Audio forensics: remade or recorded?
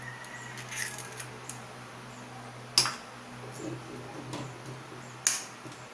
recorded